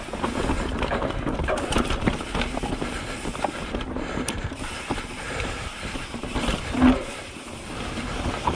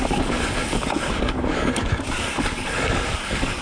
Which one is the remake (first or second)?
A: second